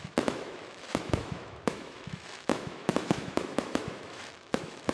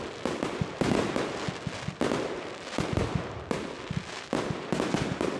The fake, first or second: first